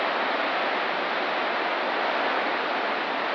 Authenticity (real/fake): real